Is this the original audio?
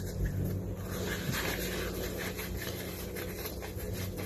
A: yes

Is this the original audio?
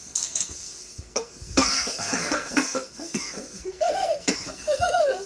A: no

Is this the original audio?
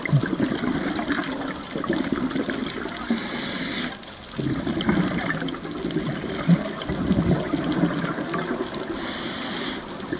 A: yes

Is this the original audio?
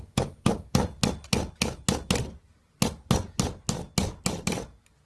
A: yes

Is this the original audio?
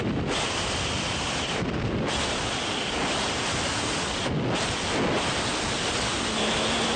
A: yes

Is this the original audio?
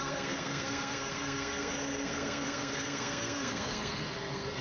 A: no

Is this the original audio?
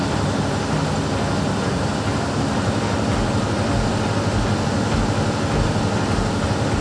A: yes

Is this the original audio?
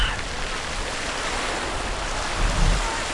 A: yes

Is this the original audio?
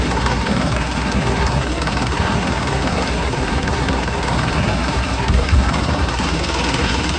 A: no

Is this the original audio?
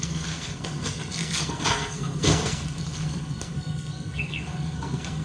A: no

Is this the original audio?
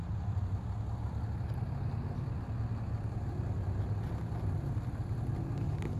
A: yes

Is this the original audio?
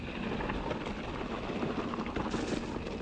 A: yes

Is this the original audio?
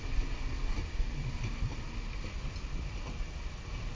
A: yes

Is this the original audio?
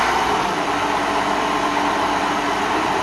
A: yes